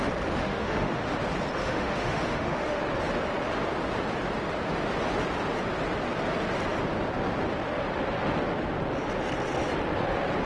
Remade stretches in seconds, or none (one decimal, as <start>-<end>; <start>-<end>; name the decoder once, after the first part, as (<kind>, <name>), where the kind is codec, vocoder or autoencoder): 0.4-1.1 (autoencoder, DAC-VAE); 1.6-2.8